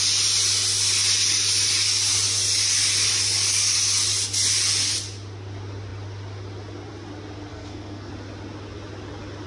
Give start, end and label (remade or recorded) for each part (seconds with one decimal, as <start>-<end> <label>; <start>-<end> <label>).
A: 0.0-7.5 recorded; 7.5-8.1 remade; 8.1-9.5 recorded